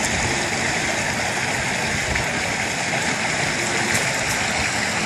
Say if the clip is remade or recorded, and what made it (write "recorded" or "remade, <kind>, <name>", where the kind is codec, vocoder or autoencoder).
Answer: recorded